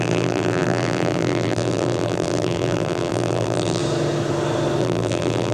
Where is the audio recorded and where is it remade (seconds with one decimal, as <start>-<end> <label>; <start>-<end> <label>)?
0.0-3.8 remade; 3.8-4.8 recorded; 4.8-5.5 remade